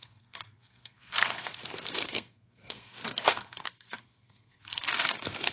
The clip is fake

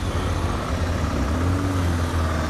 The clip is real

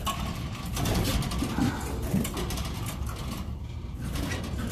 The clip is real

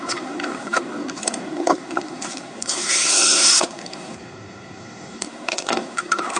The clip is fake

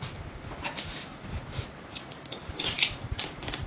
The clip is real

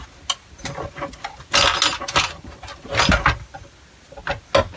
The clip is real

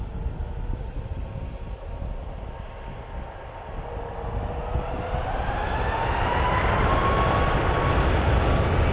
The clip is real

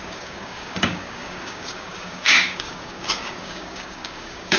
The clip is fake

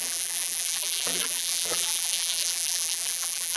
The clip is fake